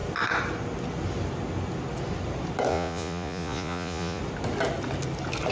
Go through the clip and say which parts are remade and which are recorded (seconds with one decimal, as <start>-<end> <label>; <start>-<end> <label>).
0.0-2.7 recorded; 2.7-4.2 remade; 4.2-5.5 recorded